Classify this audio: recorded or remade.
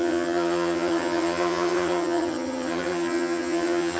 remade